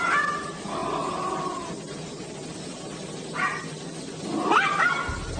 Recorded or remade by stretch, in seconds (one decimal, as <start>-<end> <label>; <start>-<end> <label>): 0.0-5.4 recorded